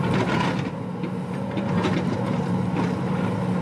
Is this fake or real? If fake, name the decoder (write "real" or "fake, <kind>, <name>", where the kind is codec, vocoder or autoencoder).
real